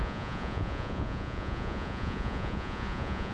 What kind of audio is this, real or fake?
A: fake